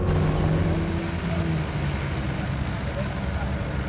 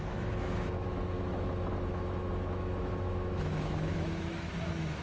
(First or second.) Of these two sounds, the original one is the first